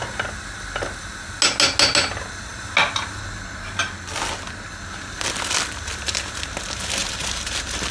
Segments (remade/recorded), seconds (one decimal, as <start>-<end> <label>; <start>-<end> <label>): 0.0-7.0 recorded; 7.0-7.9 remade